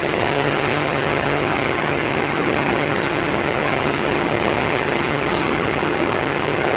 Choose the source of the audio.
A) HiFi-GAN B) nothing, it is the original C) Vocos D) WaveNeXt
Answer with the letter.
A